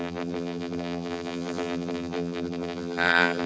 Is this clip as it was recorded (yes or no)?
no